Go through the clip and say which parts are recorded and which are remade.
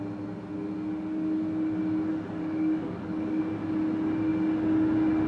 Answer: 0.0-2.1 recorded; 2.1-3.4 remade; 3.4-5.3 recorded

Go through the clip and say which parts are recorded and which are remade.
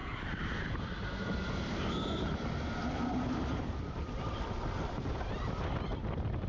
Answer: 0.0-6.5 recorded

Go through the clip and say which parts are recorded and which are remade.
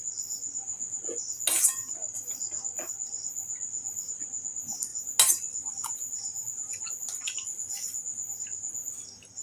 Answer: 0.0-2.0 recorded; 2.0-2.9 remade; 2.9-9.4 recorded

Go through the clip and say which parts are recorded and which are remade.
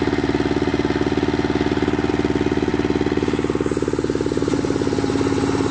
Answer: 0.0-5.7 recorded